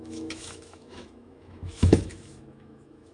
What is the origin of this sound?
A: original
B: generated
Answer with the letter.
B